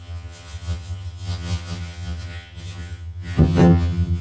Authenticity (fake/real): fake